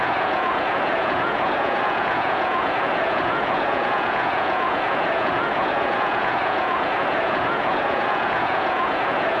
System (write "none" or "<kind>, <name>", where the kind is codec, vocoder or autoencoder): vocoder, Vocos